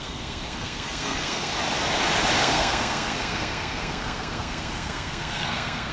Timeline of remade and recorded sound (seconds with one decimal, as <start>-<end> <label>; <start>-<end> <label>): 0.0-1.5 remade; 1.5-2.4 recorded; 2.4-5.9 remade